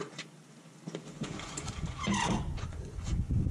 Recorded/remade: remade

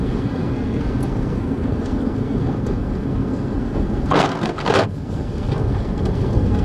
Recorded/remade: remade